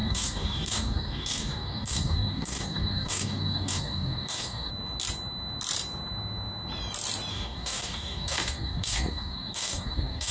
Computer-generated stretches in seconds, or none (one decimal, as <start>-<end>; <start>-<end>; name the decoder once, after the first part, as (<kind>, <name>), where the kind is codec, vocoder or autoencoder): 0.0-4.7 (codec, DAC); 7.3-10.3